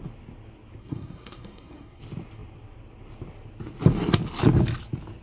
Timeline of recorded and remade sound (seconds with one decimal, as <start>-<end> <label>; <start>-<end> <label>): 0.0-0.8 recorded; 0.8-2.0 remade; 2.0-5.2 recorded